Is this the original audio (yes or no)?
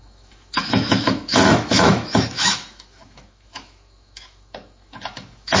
no